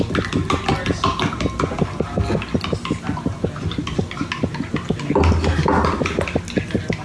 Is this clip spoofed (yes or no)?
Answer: no